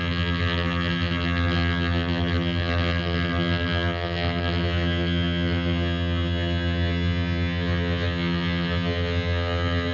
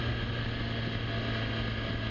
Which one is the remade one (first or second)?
first